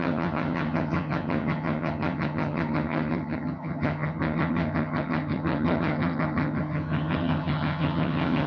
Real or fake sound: fake